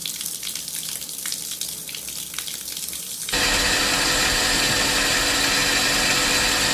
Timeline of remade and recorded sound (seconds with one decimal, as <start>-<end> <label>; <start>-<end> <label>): 0.0-6.7 recorded